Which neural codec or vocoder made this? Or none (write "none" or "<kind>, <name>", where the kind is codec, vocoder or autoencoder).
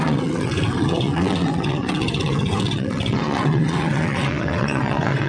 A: vocoder, WaveNeXt